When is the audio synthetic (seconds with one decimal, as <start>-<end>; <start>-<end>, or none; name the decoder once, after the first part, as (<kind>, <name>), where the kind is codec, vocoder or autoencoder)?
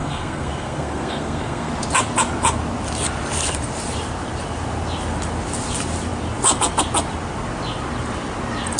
0.0-1.7 (codec, SNAC)